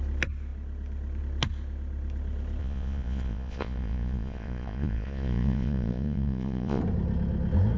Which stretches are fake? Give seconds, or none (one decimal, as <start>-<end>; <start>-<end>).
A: 2.6-6.8